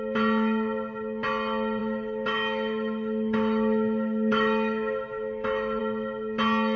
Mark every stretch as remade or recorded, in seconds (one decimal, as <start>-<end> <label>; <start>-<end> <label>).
0.0-1.8 recorded; 1.8-5.8 remade; 5.8-6.8 recorded